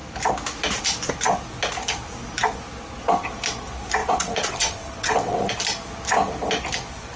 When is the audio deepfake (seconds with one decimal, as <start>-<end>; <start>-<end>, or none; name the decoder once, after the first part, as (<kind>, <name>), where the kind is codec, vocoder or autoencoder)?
4.0-5.5 (vocoder, WaveNeXt)